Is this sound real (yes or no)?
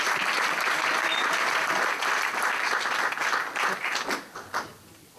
yes